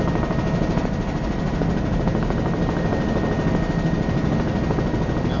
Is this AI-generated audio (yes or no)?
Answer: no